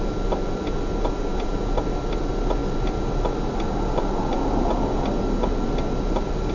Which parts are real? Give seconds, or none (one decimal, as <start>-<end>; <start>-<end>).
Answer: 0.0-6.5